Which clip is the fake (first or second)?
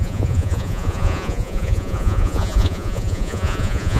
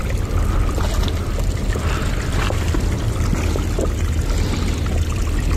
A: first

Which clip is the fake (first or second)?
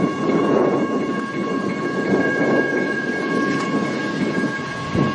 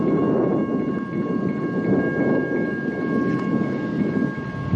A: first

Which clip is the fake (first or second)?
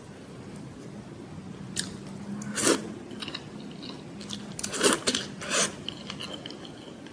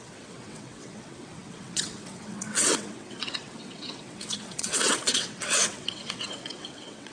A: second